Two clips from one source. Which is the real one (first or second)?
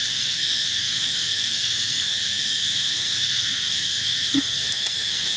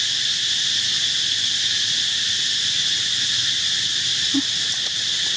second